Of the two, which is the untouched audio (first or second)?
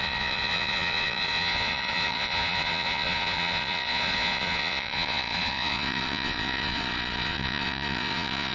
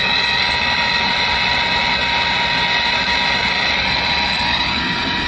second